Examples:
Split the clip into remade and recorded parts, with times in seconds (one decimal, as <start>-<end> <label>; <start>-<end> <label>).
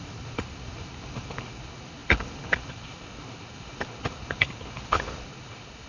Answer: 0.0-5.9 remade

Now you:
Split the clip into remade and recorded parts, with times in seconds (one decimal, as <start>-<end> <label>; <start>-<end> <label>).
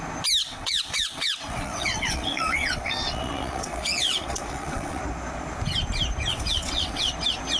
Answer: 0.0-0.4 recorded; 0.4-5.0 remade; 5.0-6.3 recorded; 6.3-7.1 remade; 7.1-7.6 recorded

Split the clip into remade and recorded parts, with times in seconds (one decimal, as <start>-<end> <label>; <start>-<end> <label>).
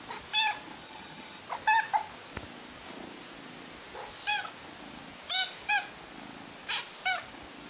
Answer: 0.0-0.8 recorded; 0.8-1.4 remade; 1.4-7.7 recorded